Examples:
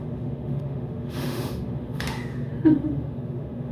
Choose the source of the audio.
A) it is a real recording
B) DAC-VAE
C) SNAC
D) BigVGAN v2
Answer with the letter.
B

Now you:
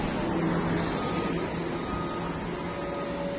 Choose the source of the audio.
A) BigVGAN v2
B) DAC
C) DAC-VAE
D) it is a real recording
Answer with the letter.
D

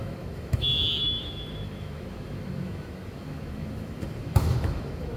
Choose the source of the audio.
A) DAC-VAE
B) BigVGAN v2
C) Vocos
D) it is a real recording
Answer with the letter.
A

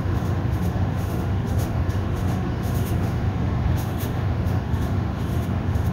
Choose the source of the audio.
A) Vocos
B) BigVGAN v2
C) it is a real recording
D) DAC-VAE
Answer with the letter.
D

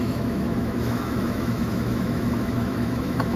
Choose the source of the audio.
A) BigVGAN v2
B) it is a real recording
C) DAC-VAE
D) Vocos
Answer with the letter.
C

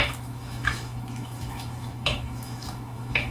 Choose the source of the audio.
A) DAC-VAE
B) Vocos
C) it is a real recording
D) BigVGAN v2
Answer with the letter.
A